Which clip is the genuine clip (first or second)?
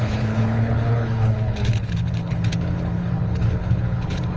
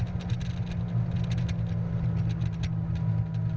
second